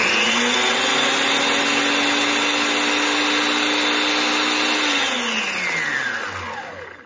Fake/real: real